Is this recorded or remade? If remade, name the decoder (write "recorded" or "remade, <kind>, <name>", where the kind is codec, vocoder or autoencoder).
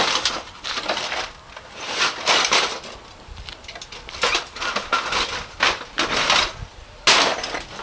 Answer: recorded